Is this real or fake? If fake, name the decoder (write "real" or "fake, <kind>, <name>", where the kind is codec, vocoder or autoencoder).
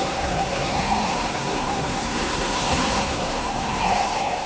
fake, codec, SNAC